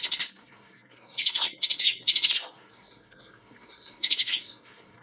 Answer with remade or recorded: remade